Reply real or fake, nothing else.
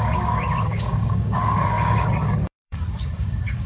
fake